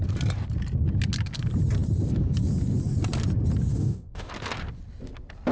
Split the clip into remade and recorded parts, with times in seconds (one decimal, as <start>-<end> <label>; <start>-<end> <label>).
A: 0.0-3.7 recorded; 3.7-4.3 remade; 4.3-5.5 recorded